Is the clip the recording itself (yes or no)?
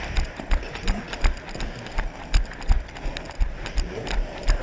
yes